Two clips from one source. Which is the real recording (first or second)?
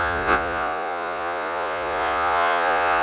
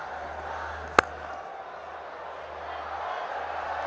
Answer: second